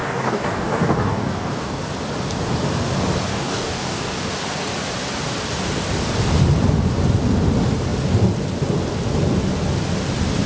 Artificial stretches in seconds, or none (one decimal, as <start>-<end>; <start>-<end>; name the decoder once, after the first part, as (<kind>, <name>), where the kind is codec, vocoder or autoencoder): 0.0-1.8 (codec, DAC); 3.3-4.3